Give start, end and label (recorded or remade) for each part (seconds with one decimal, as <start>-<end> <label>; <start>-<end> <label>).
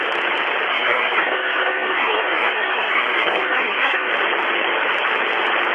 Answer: 0.0-0.7 recorded; 0.7-4.1 remade; 4.1-5.7 recorded